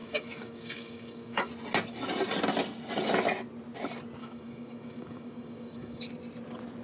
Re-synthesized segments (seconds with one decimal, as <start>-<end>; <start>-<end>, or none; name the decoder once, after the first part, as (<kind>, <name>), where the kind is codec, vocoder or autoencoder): 0.0-1.5 (autoencoder, DAC-VAE); 4.2-6.1